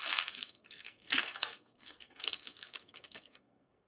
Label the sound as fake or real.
fake